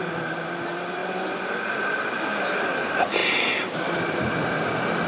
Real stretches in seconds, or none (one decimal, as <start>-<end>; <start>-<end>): 0.0-5.1

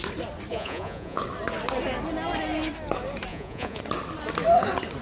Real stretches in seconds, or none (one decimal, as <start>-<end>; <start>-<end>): 0.0-0.5; 1.2-3.3; 3.8-5.0

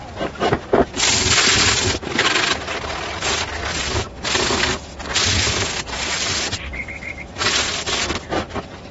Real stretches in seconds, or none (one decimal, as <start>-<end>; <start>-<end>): 0.0-8.9

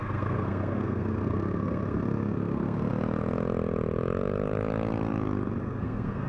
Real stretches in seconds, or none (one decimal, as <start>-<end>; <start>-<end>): 2.9-5.6

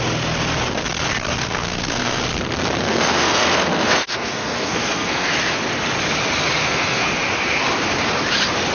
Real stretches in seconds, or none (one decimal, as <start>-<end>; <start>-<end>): 0.0-1.4; 2.2-2.9; 5.3-6.6; 7.1-8.7

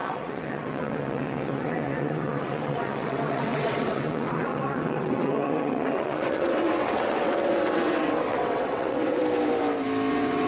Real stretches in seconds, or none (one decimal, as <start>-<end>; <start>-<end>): 9.2-10.1